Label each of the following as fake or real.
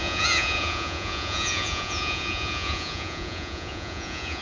fake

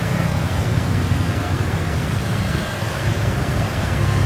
fake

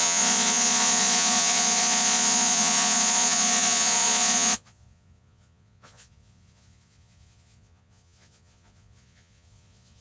fake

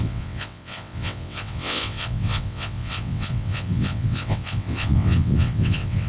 fake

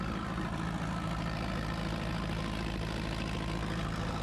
fake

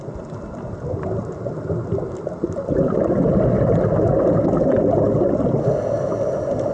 real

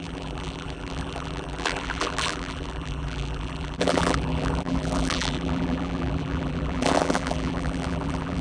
fake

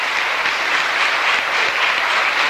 real